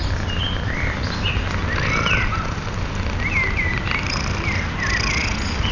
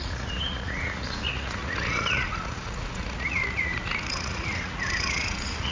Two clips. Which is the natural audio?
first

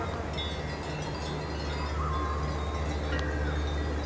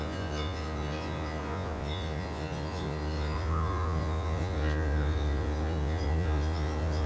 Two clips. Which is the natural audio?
first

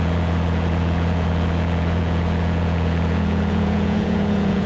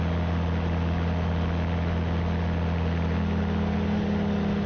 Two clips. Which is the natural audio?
second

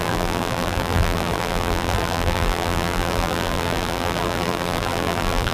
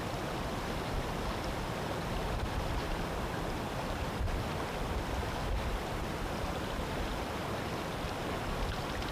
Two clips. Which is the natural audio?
second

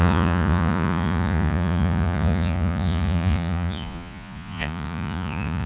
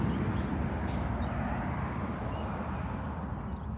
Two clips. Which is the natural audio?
second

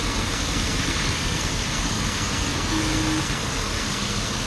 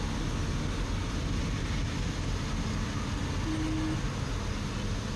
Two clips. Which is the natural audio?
second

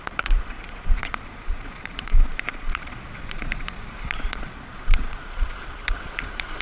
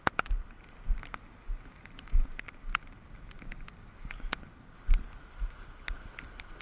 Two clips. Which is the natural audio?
second